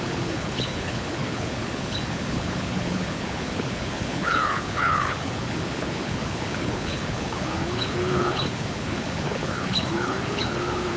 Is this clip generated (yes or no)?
yes